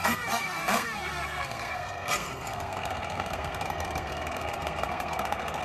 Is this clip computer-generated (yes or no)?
yes